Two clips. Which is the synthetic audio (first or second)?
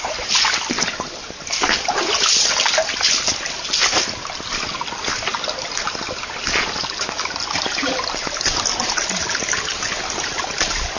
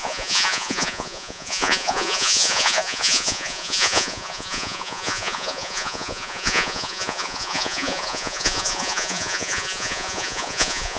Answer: second